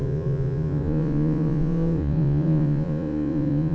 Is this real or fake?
fake